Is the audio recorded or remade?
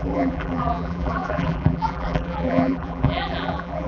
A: remade